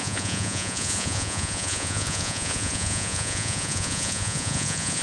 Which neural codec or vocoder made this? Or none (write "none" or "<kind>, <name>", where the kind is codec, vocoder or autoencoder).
vocoder, Vocos